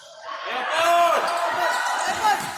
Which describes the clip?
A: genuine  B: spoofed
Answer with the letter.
A